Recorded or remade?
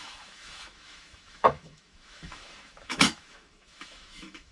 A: remade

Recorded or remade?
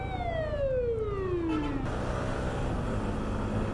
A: recorded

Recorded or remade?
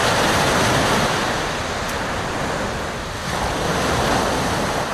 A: recorded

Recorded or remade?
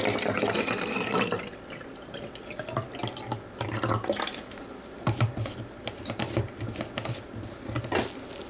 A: recorded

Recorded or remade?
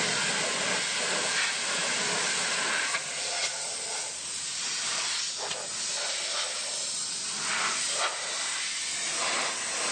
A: recorded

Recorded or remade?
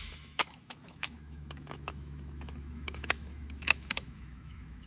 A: remade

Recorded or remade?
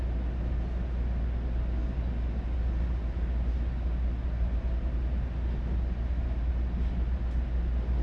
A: recorded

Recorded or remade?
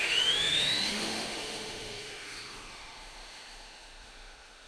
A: remade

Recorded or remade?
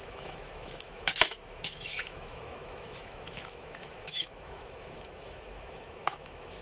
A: remade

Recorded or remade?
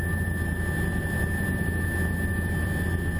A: recorded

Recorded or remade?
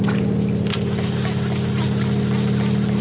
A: recorded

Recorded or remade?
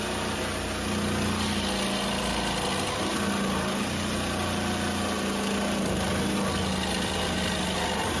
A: recorded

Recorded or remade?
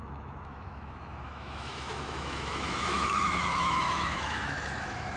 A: remade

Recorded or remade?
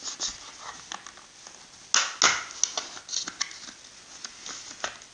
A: recorded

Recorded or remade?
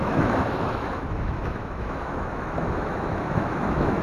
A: remade